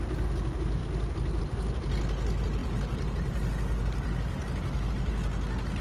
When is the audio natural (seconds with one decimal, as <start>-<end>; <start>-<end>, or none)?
0.0-5.8